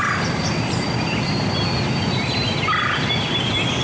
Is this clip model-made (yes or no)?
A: no